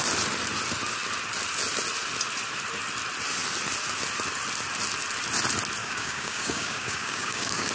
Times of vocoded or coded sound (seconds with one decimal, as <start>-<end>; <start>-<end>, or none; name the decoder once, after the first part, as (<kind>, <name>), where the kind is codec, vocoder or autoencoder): 5.8-7.7 (codec, DAC)